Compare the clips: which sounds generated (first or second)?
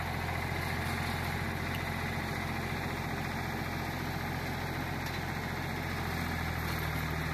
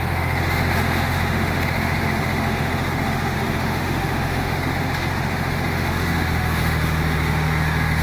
second